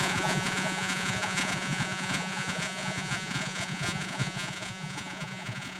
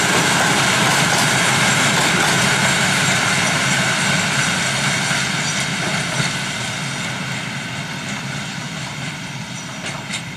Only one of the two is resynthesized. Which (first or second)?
first